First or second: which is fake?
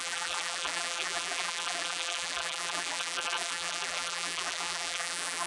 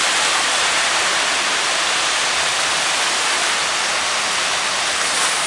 first